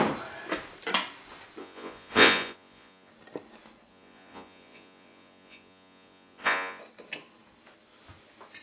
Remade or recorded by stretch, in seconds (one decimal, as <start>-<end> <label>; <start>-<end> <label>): 0.0-1.6 recorded; 1.6-3.1 remade; 3.1-3.9 recorded; 3.9-6.8 remade; 6.8-8.6 recorded